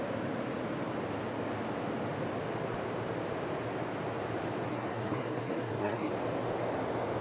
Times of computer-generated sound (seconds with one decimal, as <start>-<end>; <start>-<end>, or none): 4.7-6.1